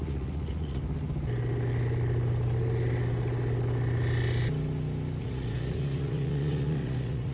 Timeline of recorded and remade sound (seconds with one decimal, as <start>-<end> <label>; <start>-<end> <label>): 0.0-0.8 remade; 0.8-5.2 recorded; 5.2-7.3 remade